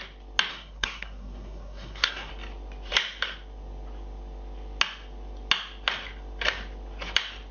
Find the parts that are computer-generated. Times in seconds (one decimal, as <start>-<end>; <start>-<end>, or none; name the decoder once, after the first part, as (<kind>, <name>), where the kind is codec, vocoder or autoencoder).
0.5-2.3 (codec, SNAC)